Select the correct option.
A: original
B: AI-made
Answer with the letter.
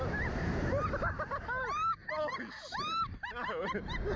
A